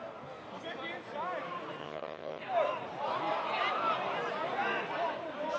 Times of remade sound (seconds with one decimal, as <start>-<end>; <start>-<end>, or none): 1.8-2.4

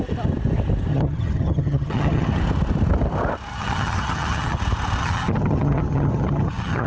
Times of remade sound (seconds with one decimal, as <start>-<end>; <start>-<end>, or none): 0.9-2.4; 3.5-4.6; 5.0-6.9

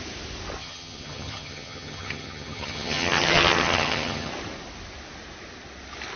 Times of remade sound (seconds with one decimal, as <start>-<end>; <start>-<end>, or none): 0.6-4.3

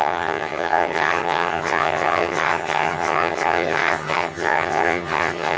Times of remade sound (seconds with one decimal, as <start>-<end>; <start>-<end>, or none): 0.0-5.6

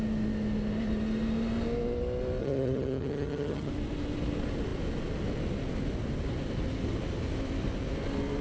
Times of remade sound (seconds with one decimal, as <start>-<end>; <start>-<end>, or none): 2.4-3.7